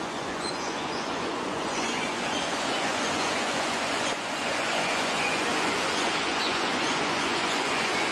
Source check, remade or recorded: remade